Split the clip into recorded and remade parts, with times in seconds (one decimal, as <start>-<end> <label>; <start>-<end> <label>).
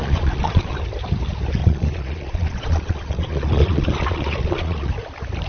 0.0-0.8 remade; 0.8-1.6 recorded; 1.6-4.9 remade; 4.9-5.5 recorded